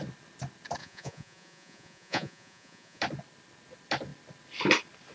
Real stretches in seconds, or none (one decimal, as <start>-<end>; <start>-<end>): 0.0-0.8; 3.0-5.1